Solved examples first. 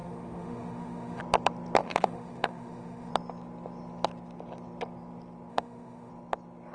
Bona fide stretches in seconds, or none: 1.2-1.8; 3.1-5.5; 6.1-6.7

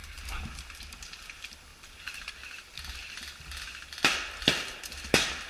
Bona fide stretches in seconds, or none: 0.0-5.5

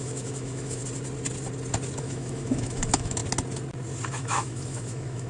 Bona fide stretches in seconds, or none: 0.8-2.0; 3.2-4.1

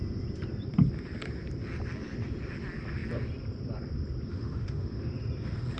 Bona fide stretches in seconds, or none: 0.0-4.3; 5.1-5.8

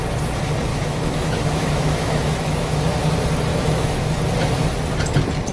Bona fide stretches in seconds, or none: 0.0-0.7; 2.8-3.5; 4.2-5.5

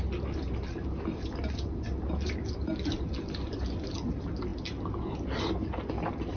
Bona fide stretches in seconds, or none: 0.0-6.4

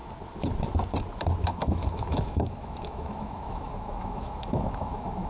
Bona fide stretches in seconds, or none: 0.0-1.5

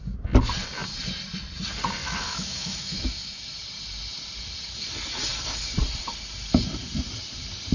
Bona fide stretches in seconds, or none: 0.0-2.0; 3.4-7.7